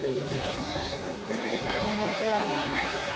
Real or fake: fake